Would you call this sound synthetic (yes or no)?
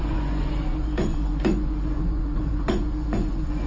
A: yes